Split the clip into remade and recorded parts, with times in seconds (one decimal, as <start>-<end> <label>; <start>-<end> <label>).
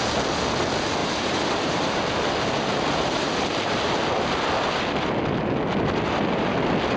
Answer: 0.0-1.0 recorded; 1.0-2.0 remade; 2.0-7.0 recorded